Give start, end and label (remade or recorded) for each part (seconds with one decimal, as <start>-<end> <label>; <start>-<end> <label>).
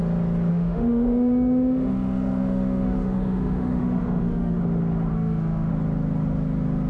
0.0-0.5 recorded; 0.5-4.6 remade; 4.6-5.1 recorded; 5.1-5.7 remade; 5.7-6.9 recorded